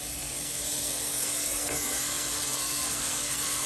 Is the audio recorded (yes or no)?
no